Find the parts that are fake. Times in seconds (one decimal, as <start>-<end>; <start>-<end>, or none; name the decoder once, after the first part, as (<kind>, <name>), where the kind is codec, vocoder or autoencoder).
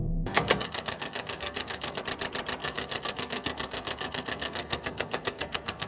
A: 0.0-2.0 (codec, SNAC); 2.6-5.9